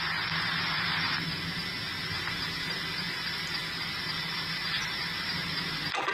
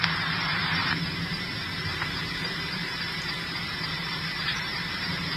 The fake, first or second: second